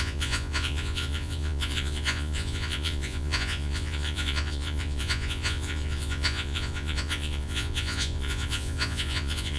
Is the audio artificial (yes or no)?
yes